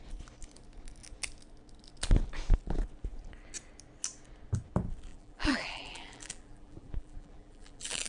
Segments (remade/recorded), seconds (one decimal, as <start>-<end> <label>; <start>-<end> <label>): 0.0-5.1 recorded; 5.1-8.1 remade